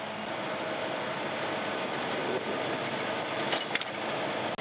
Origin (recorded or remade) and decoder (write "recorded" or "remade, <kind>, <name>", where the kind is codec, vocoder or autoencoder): recorded